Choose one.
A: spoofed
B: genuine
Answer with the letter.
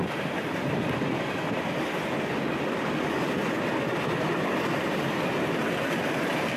B